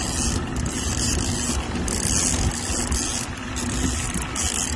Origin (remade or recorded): recorded